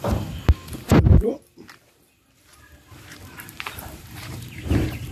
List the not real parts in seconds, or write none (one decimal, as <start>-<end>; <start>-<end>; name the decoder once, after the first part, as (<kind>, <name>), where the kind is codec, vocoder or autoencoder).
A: 2.5-5.1 (vocoder, BigVGAN v2)